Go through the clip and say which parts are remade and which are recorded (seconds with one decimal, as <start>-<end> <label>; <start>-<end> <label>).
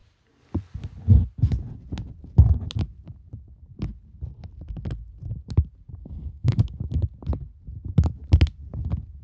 0.0-6.0 recorded; 6.0-6.6 remade; 6.6-9.2 recorded